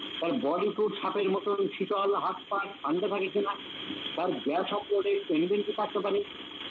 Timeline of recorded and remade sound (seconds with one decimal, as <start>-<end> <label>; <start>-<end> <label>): 0.0-1.2 recorded; 1.2-2.1 remade; 2.1-2.7 recorded; 2.7-5.9 remade; 5.9-6.7 recorded